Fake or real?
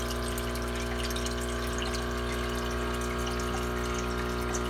real